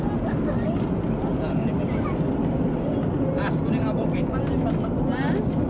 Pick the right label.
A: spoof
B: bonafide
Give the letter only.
B